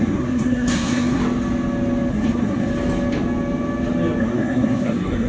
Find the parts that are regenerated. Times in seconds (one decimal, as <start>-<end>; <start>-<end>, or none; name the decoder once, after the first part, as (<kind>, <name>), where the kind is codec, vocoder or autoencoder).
0.0-1.2 (codec, SNAC); 2.1-2.7; 4.2-5.3

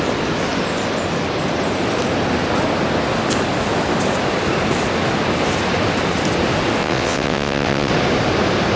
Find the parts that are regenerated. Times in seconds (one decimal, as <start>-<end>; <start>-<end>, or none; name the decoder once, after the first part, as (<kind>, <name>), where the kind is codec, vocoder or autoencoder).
6.8-7.9 (vocoder, WaveNeXt)

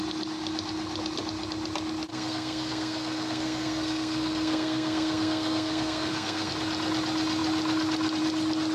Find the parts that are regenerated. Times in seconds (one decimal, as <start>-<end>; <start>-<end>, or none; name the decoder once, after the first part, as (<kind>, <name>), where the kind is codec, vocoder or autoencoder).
2.1-6.5 (codec, SNAC)

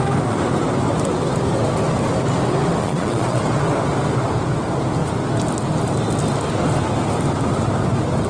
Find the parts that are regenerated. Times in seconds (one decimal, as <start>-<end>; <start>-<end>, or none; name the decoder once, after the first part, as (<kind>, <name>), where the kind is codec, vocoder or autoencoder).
2.8-3.4 (vocoder, Vocos)

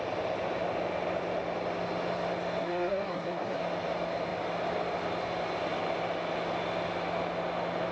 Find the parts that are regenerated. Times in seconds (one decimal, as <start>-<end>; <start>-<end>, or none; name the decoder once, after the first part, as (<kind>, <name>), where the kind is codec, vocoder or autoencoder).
2.6-3.6 (codec, SNAC)

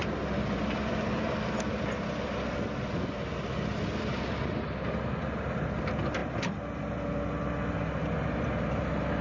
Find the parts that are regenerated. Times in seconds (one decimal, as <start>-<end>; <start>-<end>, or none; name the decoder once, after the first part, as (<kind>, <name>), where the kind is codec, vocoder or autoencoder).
0.0-0.6 (vocoder, BigVGAN v2)

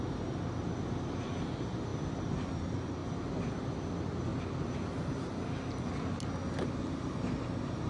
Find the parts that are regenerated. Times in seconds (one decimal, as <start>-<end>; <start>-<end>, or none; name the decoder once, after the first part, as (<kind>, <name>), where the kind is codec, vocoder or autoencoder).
none